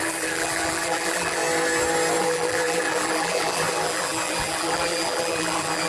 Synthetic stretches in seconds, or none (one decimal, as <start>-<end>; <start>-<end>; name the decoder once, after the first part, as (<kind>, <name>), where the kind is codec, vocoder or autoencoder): 0.0-1.4 (vocoder, BigVGAN v2); 2.2-5.9